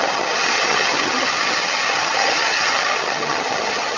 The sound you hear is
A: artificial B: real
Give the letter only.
A